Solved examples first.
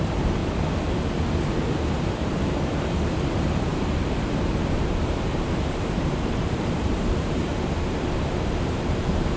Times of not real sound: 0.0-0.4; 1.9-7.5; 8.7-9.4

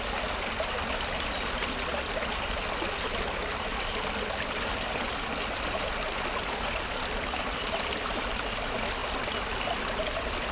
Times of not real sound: 9.0-10.5

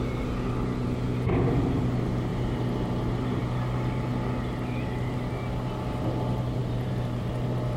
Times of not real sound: 2.3-3.4; 6.6-7.3